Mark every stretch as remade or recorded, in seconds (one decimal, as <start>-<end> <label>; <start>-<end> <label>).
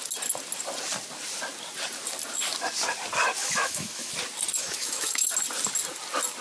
0.0-3.4 recorded; 3.4-4.1 remade; 4.1-4.6 recorded; 4.6-5.3 remade; 5.3-6.4 recorded